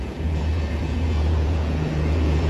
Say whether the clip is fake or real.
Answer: fake